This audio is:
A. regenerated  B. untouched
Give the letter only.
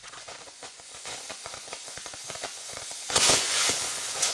A